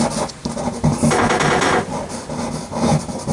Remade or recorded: recorded